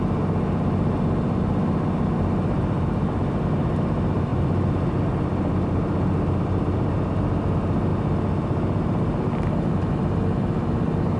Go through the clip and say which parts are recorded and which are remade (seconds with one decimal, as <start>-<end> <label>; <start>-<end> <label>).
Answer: 0.0-11.2 recorded